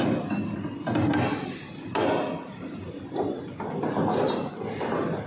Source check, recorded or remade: recorded